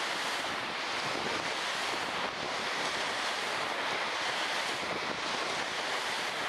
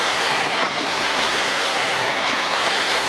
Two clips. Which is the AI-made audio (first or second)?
second